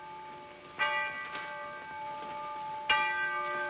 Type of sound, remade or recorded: recorded